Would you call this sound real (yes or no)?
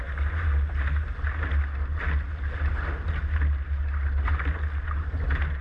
yes